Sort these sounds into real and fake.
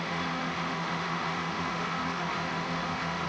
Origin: fake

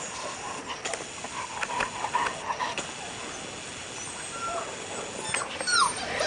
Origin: real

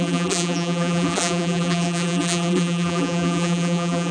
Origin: fake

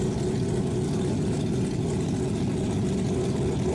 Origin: real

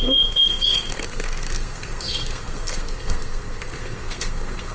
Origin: fake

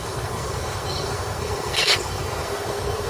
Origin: fake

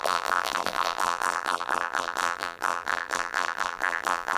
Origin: fake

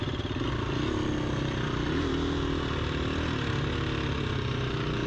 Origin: real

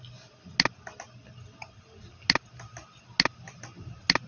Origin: real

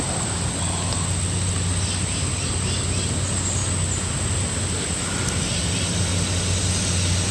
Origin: real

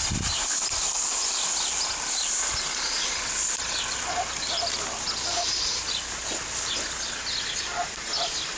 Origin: real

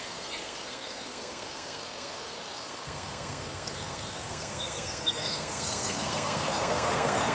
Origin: fake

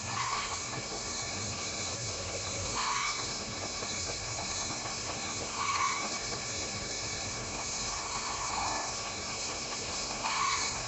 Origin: fake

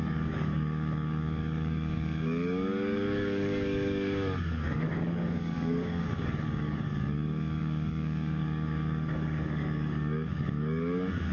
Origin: fake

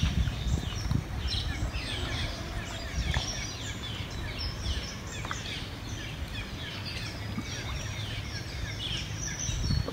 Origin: real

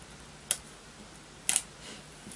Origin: real